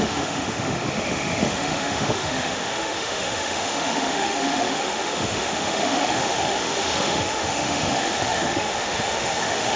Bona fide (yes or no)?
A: no